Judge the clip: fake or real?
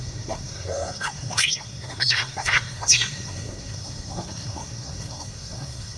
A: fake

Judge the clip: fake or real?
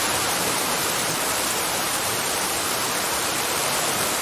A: fake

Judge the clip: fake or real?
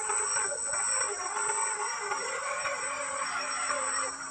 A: real